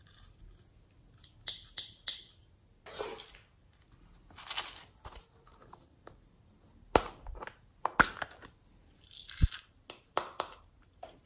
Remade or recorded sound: recorded